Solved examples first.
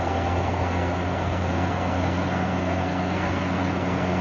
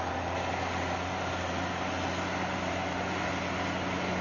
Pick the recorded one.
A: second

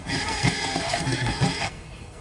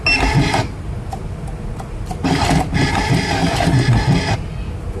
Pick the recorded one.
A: second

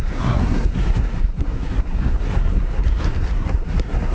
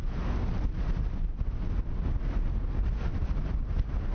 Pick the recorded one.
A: second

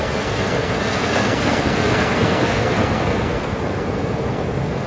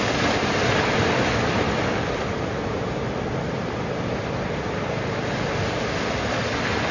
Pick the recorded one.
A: second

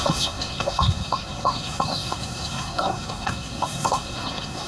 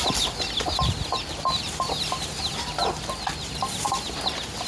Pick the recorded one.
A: second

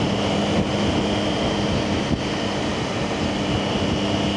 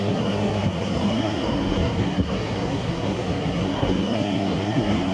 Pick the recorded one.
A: first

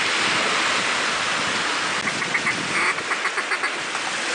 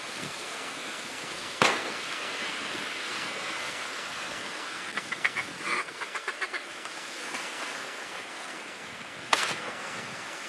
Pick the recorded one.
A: first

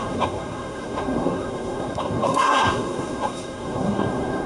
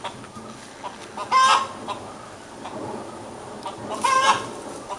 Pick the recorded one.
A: second